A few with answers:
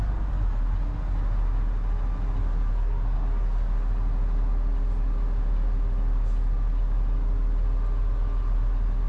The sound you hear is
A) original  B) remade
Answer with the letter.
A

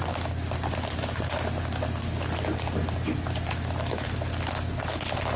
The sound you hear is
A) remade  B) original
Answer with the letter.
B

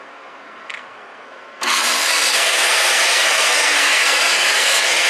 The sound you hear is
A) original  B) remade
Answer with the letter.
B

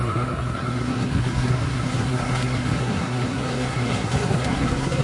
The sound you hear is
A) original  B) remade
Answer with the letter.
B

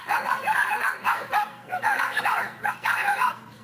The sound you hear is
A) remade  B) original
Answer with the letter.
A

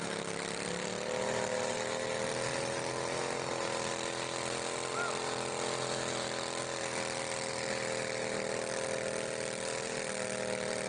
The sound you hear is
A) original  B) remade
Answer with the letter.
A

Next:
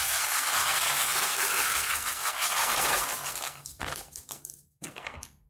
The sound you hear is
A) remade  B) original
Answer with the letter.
A